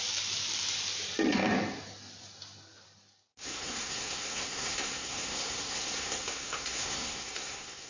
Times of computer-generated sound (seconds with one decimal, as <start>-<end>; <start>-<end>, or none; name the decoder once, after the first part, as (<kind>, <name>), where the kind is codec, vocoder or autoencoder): 3.3-7.9 (codec, SNAC)